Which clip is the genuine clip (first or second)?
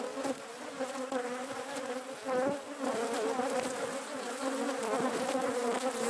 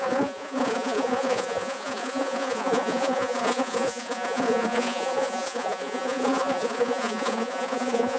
first